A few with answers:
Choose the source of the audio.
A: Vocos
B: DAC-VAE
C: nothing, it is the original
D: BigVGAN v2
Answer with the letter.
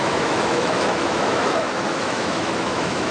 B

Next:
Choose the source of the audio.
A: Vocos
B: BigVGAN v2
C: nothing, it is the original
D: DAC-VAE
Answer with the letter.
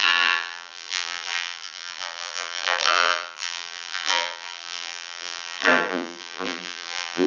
B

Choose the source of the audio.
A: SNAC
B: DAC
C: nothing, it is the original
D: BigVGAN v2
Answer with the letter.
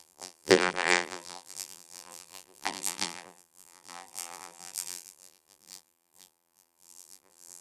D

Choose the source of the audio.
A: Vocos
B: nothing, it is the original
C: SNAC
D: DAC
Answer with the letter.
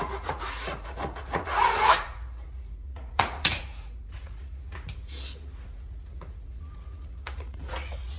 A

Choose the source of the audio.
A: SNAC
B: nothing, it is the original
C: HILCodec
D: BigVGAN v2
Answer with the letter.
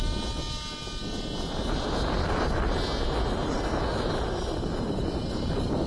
B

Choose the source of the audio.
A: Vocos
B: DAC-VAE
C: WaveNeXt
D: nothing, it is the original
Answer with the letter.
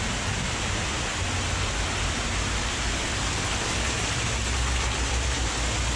D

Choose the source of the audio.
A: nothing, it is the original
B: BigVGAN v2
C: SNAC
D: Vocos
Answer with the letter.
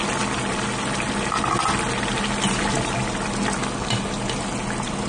A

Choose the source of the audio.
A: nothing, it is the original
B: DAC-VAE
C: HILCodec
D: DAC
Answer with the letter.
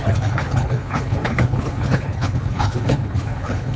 C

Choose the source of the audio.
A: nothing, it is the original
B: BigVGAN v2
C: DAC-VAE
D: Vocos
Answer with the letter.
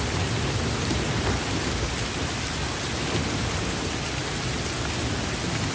A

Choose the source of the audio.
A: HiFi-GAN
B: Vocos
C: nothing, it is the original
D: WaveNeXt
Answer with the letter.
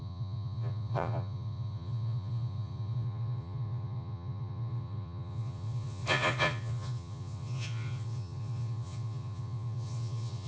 B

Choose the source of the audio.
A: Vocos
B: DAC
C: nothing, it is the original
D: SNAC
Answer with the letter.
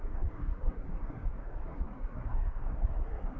D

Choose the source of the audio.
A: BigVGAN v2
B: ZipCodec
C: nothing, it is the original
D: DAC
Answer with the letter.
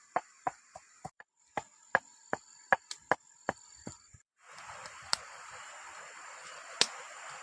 C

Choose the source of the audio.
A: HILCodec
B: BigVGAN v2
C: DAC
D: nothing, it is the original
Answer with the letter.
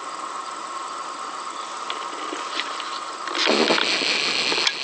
D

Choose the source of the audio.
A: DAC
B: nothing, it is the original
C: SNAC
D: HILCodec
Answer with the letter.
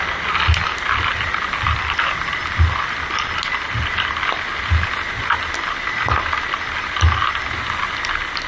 B